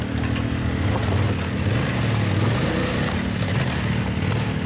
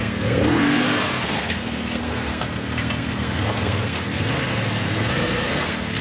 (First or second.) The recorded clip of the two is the first